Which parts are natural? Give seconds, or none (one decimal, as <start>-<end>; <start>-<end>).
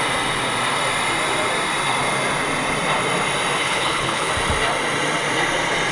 0.0-3.6; 4.3-5.9